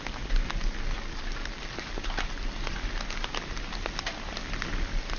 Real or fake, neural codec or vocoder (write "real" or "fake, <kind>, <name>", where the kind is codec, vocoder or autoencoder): real